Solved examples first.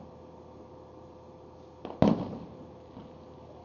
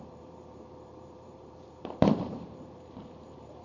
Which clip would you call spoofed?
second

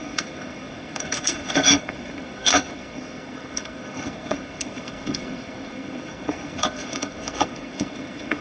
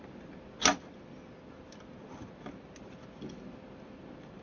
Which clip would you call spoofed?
first